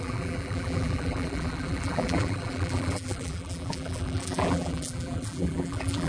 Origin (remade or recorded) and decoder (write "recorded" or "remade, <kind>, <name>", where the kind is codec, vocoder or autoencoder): remade, vocoder, BigVGAN v2